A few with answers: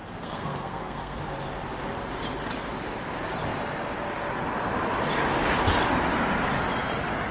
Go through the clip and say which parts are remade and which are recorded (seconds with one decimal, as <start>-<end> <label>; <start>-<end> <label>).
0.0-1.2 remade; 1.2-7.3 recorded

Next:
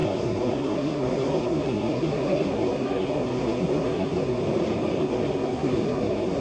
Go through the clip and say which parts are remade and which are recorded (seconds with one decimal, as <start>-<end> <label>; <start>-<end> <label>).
0.0-4.4 remade; 4.4-5.0 recorded; 5.0-6.4 remade

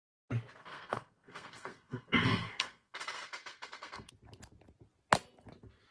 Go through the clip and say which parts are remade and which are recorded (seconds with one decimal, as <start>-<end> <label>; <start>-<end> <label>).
0.0-0.6 recorded; 0.6-4.1 remade; 4.1-5.9 recorded